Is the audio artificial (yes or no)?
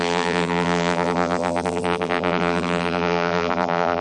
yes